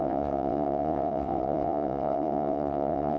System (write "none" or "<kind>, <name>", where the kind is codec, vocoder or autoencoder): vocoder, WaveNeXt